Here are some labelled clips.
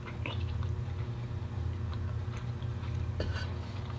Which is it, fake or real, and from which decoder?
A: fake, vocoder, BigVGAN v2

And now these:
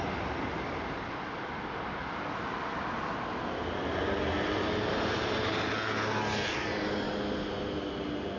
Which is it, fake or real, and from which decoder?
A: real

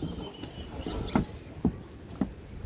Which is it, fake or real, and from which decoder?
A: real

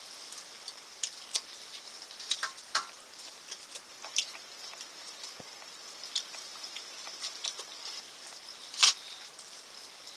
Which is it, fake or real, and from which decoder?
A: real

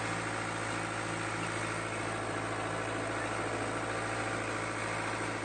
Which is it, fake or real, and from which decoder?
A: real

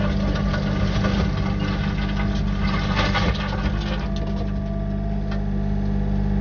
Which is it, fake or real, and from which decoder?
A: real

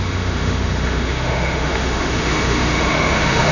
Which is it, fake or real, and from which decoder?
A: fake, autoencoder, DAC-VAE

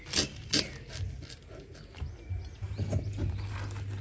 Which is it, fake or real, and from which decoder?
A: real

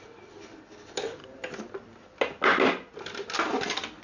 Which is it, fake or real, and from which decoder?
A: real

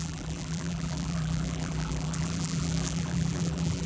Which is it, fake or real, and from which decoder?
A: fake, vocoder, BigVGAN v2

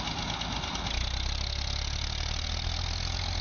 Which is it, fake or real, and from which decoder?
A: real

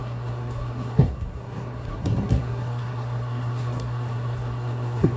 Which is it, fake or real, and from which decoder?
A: fake, codec, SNAC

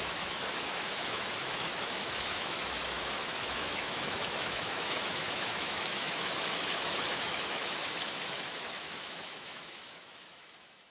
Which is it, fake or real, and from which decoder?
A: fake, autoencoder, DAC-VAE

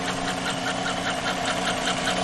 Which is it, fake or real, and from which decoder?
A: real